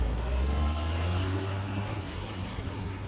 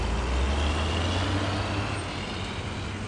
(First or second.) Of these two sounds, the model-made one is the first